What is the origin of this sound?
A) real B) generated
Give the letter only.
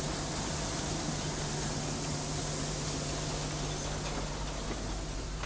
A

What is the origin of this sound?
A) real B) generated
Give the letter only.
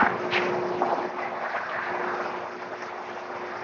A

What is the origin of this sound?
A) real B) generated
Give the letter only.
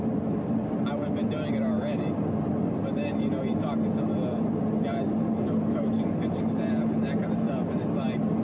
A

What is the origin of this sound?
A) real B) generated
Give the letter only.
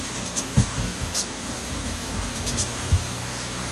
B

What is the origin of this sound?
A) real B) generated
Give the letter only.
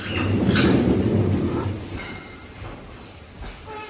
A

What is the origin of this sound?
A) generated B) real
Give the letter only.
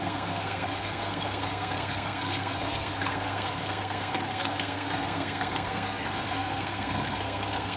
A